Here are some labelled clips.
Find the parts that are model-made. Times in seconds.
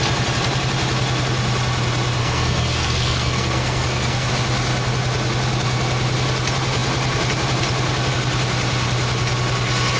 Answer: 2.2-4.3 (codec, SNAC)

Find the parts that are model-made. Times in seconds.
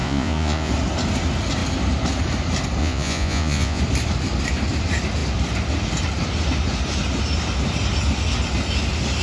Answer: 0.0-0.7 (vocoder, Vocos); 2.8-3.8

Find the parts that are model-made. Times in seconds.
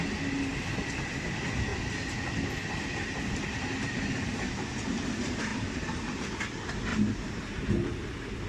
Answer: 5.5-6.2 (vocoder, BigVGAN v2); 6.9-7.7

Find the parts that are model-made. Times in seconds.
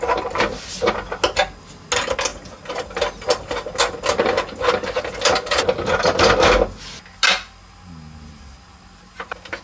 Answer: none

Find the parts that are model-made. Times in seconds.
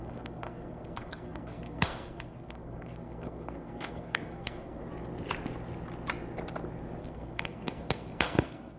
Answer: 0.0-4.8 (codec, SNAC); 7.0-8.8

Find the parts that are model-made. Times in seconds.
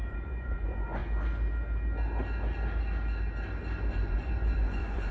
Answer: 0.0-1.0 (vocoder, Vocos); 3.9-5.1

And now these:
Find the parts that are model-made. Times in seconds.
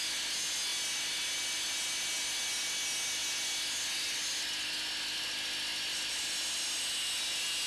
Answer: none